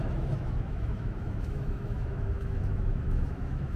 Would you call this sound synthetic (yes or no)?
yes